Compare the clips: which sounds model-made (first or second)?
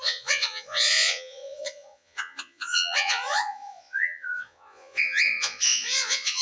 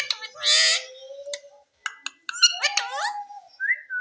first